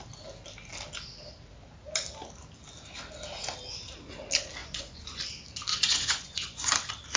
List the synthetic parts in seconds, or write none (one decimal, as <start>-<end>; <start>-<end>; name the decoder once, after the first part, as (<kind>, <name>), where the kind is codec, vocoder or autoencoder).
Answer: 4.6-5.2 (vocoder, Vocos); 5.7-6.7